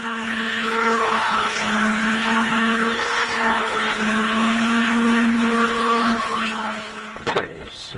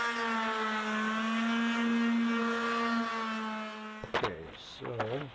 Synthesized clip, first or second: first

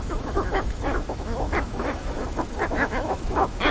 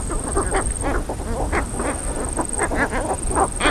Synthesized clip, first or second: first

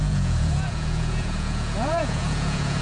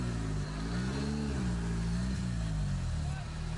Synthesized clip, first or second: first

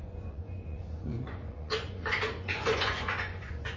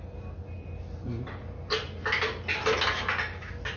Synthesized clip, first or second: first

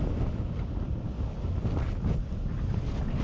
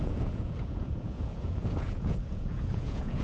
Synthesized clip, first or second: second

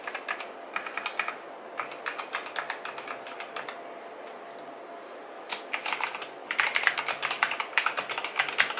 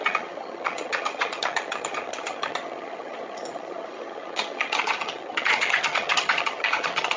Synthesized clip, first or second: second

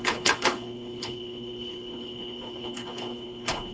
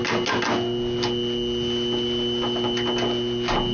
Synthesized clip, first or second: first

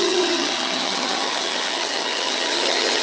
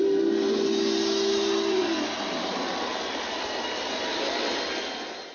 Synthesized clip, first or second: first